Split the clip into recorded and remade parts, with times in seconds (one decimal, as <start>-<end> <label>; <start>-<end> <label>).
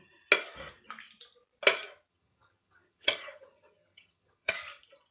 0.0-2.1 recorded; 2.1-4.5 remade; 4.5-5.1 recorded